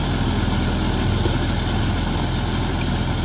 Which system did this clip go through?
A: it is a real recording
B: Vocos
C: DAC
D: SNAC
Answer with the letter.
A